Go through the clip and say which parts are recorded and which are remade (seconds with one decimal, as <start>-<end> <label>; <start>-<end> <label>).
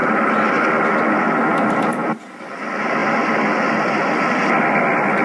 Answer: 0.0-1.0 recorded; 1.0-3.0 remade; 3.0-4.0 recorded; 4.0-5.2 remade